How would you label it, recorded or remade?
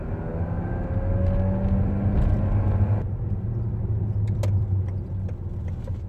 recorded